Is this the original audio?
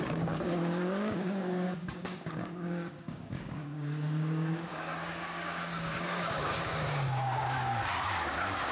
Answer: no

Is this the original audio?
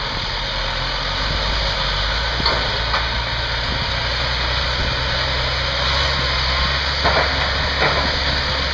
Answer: yes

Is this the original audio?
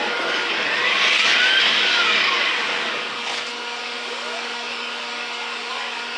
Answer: no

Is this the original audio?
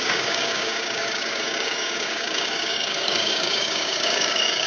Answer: no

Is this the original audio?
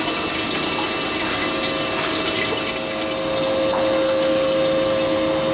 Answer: yes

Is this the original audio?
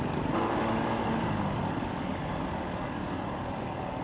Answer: no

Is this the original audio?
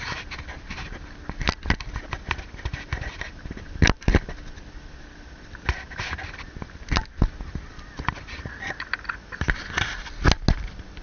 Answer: yes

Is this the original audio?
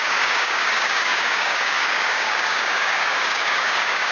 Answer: no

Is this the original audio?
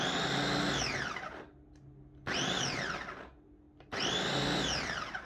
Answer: yes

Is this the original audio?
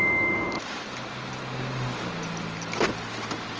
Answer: yes